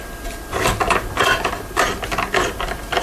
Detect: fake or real real